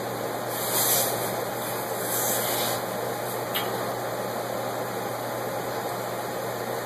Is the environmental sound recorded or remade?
recorded